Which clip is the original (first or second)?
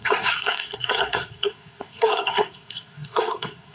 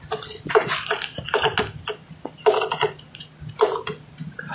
second